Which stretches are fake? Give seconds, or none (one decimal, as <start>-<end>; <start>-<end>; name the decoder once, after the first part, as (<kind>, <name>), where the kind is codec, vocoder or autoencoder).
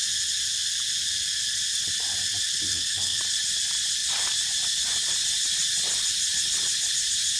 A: 2.7-3.2 (codec, SNAC)